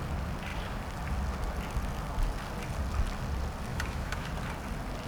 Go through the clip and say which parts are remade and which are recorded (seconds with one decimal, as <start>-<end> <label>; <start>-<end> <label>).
0.0-3.7 recorded; 3.7-4.3 remade; 4.3-5.1 recorded